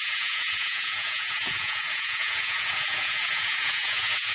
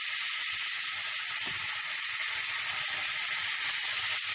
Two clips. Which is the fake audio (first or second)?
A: first